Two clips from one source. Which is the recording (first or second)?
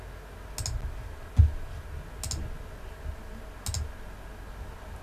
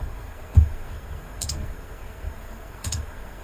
first